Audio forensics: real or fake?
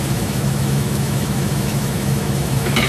fake